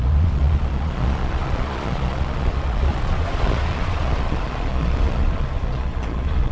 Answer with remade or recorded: remade